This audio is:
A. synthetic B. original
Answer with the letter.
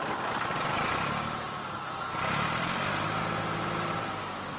B